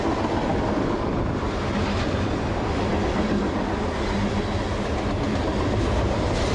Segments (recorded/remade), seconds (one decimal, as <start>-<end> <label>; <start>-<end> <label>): 0.0-0.5 recorded; 0.5-1.1 remade; 1.1-6.5 recorded